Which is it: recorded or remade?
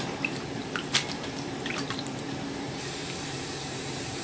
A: remade